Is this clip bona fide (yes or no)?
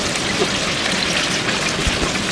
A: yes